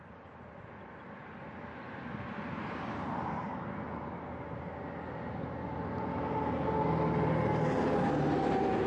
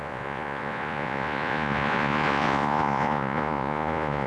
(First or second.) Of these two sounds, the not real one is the second